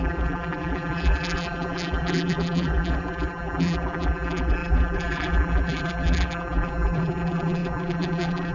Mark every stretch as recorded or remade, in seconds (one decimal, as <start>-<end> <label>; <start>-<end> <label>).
0.0-8.5 remade